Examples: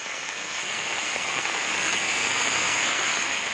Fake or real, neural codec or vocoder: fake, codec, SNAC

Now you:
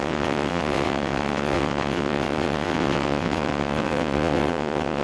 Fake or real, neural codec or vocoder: fake, vocoder, WaveNeXt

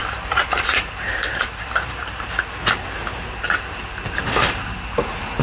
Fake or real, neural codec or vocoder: fake, vocoder, BigVGAN v2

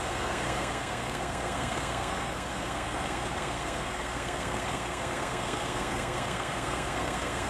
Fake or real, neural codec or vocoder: fake, codec, SNAC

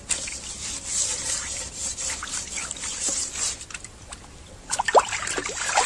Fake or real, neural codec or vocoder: real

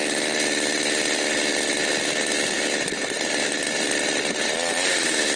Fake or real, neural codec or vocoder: real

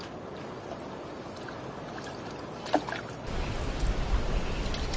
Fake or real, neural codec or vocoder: real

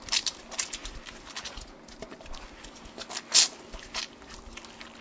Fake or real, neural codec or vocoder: real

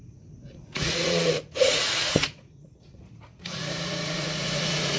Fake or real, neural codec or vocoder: fake, vocoder, Vocos